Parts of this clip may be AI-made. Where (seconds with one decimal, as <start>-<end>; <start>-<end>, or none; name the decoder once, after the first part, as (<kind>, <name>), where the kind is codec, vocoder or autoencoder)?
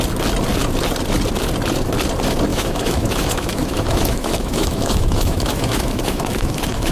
2.5-6.9 (autoencoder, DAC-VAE)